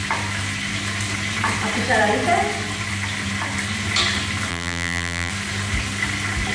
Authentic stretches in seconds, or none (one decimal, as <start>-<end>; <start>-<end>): 0.0-4.5; 5.3-6.5